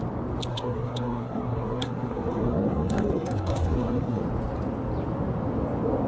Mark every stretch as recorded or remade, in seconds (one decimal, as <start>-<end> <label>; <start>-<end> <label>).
0.0-0.5 recorded; 0.5-4.2 remade; 4.2-6.1 recorded

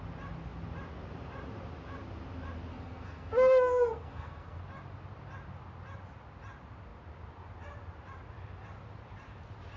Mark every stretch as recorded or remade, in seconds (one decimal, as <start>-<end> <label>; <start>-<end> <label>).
0.0-2.7 recorded; 2.7-4.6 remade; 4.6-9.8 recorded